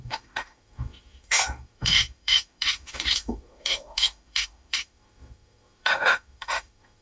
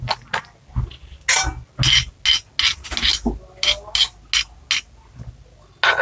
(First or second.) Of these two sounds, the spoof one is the first